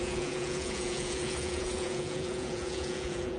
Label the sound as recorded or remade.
remade